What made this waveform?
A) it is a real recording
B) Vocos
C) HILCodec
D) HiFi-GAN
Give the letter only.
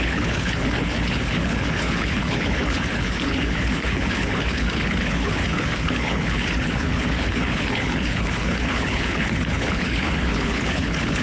C